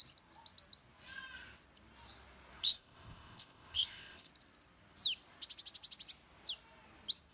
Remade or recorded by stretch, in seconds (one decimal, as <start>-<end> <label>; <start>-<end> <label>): 0.0-2.6 recorded; 2.6-4.3 remade; 4.3-7.3 recorded